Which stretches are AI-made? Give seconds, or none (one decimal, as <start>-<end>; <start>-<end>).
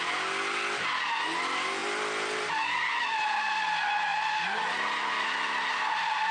1.8-2.5